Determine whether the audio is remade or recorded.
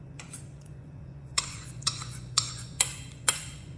remade